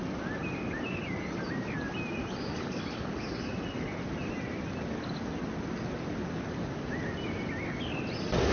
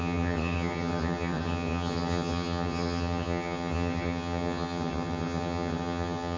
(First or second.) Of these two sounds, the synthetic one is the second